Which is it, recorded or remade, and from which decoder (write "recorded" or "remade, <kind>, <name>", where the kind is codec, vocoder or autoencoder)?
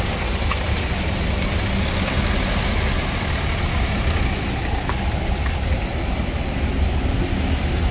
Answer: recorded